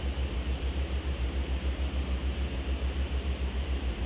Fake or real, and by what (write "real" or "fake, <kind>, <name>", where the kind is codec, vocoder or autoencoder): fake, vocoder, BigVGAN v2